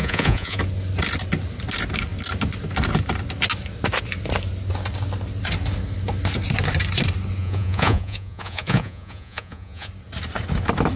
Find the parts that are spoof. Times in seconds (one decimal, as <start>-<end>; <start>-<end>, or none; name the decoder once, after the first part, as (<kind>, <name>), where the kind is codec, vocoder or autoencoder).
0.0-0.6 (vocoder, Vocos); 7.4-9.9